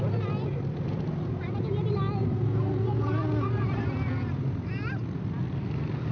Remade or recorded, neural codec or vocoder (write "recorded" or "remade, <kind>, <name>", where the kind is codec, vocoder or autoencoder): recorded